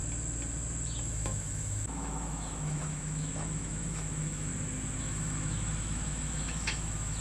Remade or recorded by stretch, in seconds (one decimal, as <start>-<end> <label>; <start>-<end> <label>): 0.0-1.0 recorded; 1.0-4.5 remade; 4.5-5.0 recorded; 5.0-7.2 remade